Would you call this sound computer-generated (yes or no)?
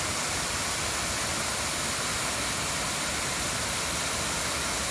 no